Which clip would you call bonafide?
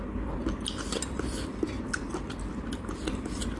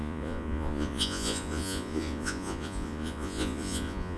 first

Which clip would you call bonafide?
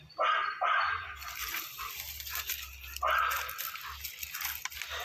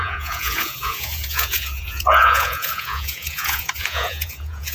first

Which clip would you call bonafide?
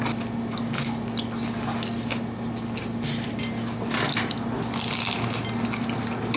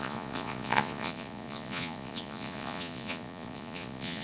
first